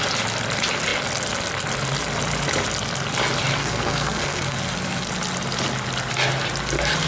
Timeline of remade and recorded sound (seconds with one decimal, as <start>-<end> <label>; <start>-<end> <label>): 0.0-3.6 recorded; 3.6-5.1 remade; 5.1-7.1 recorded